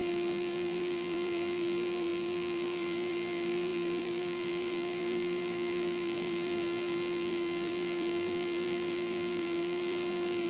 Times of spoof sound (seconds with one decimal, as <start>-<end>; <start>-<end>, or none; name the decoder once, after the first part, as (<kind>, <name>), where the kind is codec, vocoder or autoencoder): 0.0-10.5 (vocoder, BigVGAN v2)